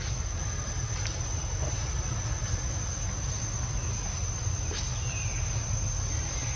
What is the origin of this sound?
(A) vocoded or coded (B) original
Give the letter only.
B